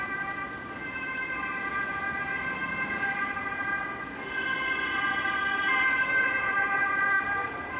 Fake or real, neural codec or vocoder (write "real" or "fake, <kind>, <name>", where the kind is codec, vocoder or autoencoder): real